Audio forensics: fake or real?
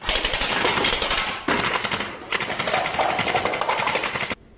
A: real